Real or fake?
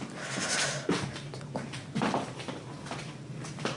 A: real